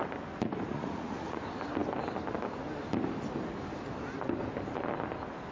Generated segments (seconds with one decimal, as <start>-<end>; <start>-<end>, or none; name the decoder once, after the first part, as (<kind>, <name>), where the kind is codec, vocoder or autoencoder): 0.7-1.4 (vocoder, Vocos)